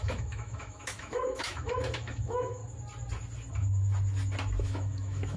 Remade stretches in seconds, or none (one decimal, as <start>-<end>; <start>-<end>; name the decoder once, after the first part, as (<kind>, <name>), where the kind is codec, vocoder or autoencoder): 0.0-2.6 (autoencoder, DAC-VAE); 4.6-5.4